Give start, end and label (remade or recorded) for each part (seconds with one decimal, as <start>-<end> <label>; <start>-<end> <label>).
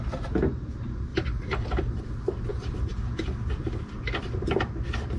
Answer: 0.0-1.1 recorded; 1.1-2.0 remade; 2.0-2.5 recorded; 2.5-3.8 remade; 3.8-5.2 recorded